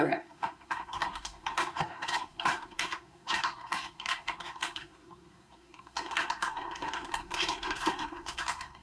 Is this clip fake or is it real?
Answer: fake